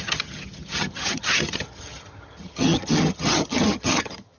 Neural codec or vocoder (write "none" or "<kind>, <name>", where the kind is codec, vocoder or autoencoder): vocoder, HiFi-GAN